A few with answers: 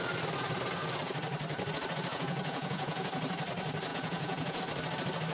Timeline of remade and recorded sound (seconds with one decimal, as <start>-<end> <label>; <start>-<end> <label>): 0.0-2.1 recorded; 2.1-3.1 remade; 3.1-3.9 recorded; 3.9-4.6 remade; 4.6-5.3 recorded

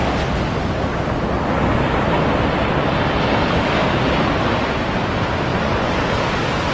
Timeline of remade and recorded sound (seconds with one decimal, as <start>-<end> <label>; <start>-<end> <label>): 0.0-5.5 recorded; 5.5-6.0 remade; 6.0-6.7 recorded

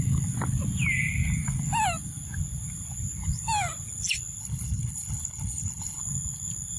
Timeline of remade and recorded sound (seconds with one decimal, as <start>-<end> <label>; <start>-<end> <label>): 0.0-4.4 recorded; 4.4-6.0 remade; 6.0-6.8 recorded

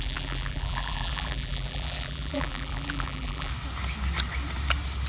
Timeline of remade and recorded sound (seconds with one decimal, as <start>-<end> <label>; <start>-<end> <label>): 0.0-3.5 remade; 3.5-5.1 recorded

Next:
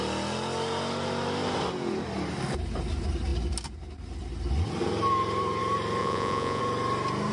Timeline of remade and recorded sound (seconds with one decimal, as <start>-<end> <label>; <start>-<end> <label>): 0.0-6.0 recorded; 6.0-6.6 remade; 6.6-7.3 recorded

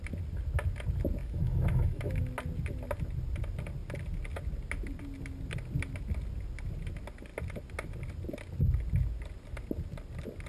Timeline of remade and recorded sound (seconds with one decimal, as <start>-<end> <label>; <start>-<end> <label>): 0.0-1.2 recorded; 1.2-2.2 remade; 2.2-10.5 recorded

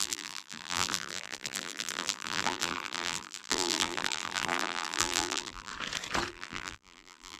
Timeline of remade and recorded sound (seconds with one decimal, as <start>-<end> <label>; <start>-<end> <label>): 0.0-5.7 remade; 5.7-6.3 recorded; 6.3-7.4 remade

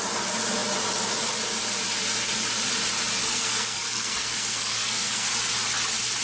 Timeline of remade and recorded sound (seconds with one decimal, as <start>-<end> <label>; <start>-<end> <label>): 0.0-3.2 recorded; 3.2-5.3 remade; 5.3-6.2 recorded